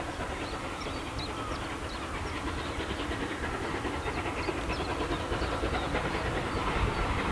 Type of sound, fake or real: real